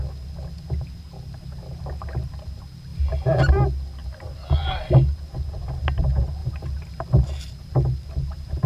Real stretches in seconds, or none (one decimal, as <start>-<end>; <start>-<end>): 0.0-4.0; 4.9-6.4